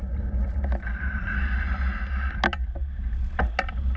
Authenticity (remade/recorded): recorded